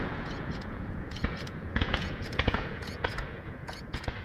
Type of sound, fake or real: fake